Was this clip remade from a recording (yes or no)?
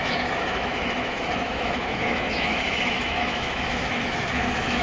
yes